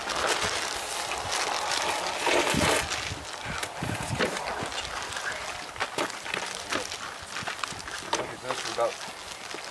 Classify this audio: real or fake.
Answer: real